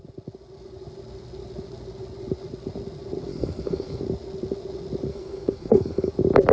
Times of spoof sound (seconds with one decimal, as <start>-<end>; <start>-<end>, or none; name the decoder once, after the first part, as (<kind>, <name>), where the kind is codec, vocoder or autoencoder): 3.3-4.0 (codec, SNAC); 5.1-6.1